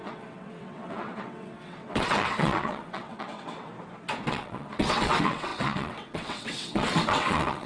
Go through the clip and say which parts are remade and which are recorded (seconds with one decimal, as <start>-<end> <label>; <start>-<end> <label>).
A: 0.0-3.7 remade; 3.7-4.3 recorded; 4.3-7.7 remade